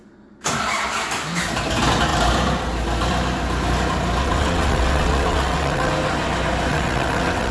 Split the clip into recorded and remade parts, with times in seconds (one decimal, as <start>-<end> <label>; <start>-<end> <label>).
0.0-4.2 recorded; 4.2-5.9 remade; 5.9-6.7 recorded; 6.7-7.5 remade